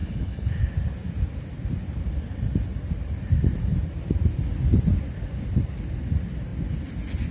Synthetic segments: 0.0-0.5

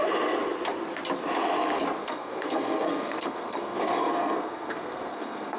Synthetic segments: 2.0-5.6

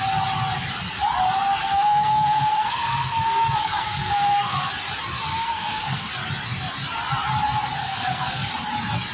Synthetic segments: 1.6-4.7; 5.3-6.1; 7.8-8.5

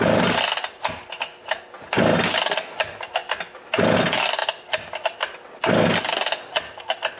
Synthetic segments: none

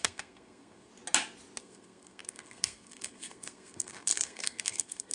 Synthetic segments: 0.0-0.9; 1.6-5.1

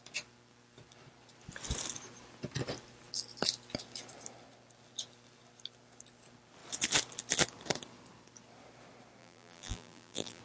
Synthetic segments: 9.2-10.4

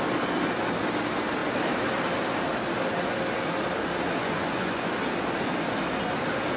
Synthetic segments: 4.2-4.9